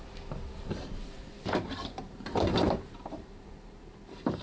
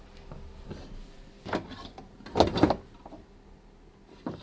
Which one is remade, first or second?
first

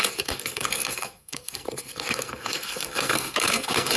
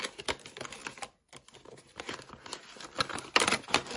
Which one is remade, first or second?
first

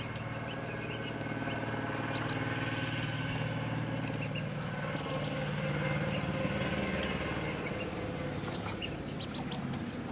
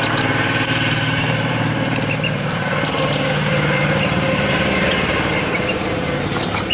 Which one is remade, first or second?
second